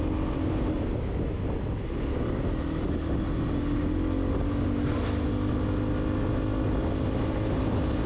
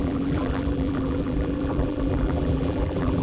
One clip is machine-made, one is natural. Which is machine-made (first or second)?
second